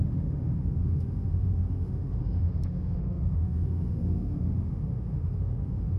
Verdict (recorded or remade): remade